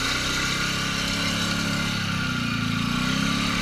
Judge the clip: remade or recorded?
recorded